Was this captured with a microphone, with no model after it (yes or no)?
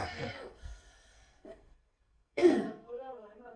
no